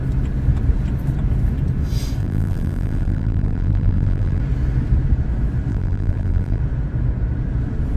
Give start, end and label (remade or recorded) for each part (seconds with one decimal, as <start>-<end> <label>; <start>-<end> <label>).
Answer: 0.0-2.2 recorded; 2.2-4.4 remade; 4.4-5.7 recorded; 5.7-6.6 remade; 6.6-8.0 recorded